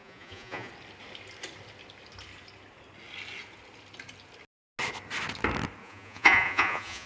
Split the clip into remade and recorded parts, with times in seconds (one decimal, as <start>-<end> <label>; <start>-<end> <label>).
0.0-0.7 remade; 0.7-5.8 recorded; 5.8-7.1 remade